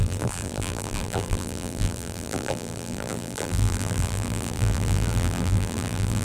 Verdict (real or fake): fake